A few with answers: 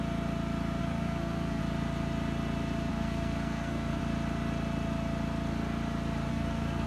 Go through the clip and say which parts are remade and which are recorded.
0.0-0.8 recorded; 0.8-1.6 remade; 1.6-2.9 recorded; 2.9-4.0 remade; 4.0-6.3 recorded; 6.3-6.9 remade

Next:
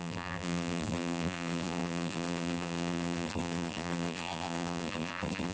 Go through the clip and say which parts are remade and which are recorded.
0.0-5.5 remade

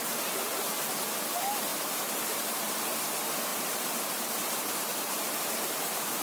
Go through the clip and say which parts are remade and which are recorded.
0.0-1.7 recorded; 1.7-2.7 remade; 2.7-3.5 recorded; 3.5-6.2 remade

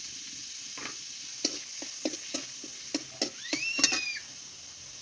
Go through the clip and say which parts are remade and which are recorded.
0.0-5.0 recorded

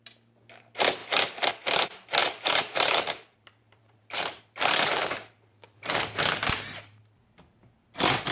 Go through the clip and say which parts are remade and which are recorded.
0.0-2.2 recorded; 2.2-7.0 remade; 7.0-8.3 recorded

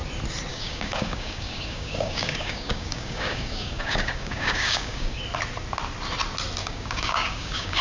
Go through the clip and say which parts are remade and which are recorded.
0.0-0.5 recorded; 0.5-5.2 remade; 5.2-6.6 recorded; 6.6-7.8 remade

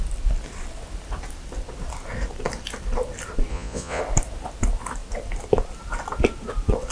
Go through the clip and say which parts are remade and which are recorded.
0.0-3.5 recorded; 3.5-4.0 remade; 4.0-6.9 recorded

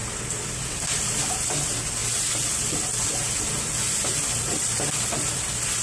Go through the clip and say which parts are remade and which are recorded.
0.0-0.5 recorded; 0.5-5.8 remade